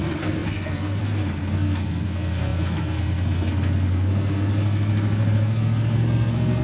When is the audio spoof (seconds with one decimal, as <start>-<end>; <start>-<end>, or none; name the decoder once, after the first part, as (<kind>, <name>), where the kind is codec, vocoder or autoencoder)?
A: 0.0-6.6 (codec, SNAC)